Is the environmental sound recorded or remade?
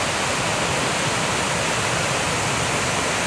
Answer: recorded